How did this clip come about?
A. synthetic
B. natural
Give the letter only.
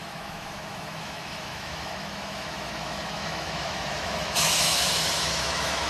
A